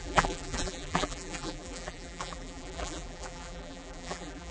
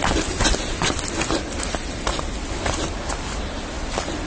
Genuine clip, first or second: second